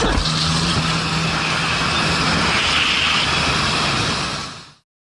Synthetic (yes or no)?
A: no